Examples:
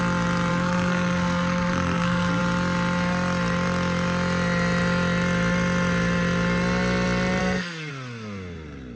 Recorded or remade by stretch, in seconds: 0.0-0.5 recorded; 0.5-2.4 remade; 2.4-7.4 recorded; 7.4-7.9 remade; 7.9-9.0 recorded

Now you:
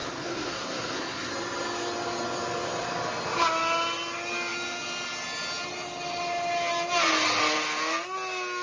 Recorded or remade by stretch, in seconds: 0.0-1.3 remade; 1.3-8.6 recorded

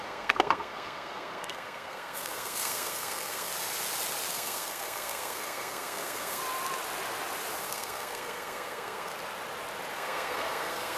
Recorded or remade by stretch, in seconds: 0.0-3.5 remade; 3.5-4.3 recorded; 4.3-6.4 remade; 6.4-7.6 recorded; 7.6-9.1 remade; 9.1-9.9 recorded; 9.9-11.0 remade

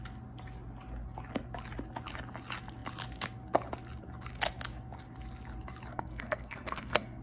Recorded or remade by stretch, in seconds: 0.0-5.9 recorded; 5.9-7.2 remade

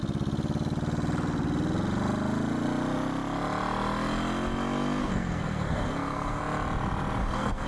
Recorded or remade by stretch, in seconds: 0.0-5.0 recorded; 5.0-6.4 remade; 6.4-7.2 recorded; 7.2-7.7 remade